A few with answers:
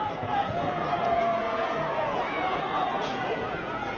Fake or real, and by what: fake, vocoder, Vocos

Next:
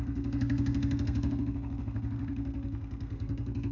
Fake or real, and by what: fake, codec, SNAC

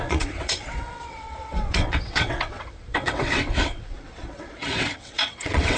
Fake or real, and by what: fake, vocoder, WaveNeXt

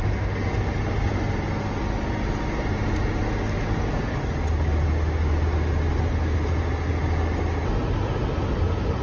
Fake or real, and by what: real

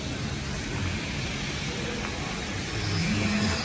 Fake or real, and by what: real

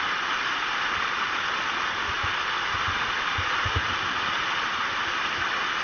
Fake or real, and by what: real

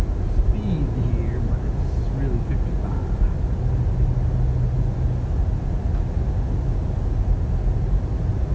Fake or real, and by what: real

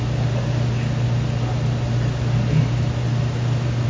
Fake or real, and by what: real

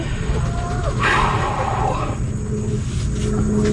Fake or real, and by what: real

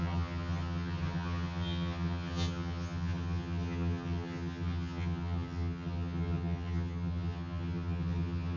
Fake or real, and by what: fake, vocoder, HiFi-GAN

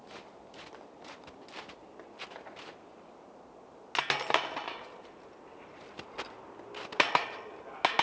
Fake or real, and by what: real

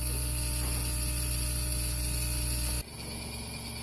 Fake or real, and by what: real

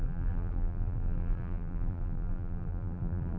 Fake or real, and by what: fake, vocoder, BigVGAN v2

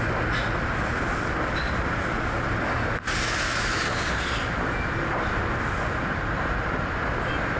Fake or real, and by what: real